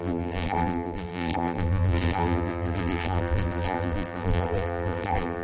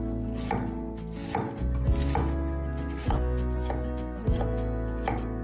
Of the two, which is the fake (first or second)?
first